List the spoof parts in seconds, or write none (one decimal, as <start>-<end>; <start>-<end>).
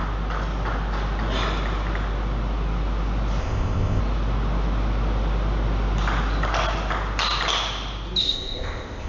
3.4-4.0; 8.2-9.1